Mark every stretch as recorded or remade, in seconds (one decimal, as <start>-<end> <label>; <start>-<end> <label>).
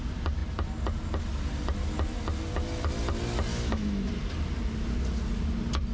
0.0-3.5 recorded; 3.5-4.1 remade; 4.1-5.9 recorded